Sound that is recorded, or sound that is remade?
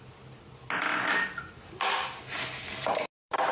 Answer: recorded